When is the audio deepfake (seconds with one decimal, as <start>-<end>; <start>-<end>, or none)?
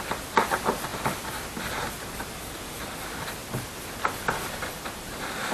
0.0-0.9; 2.7-3.4; 5.1-5.5